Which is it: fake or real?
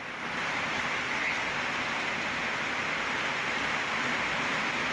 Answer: real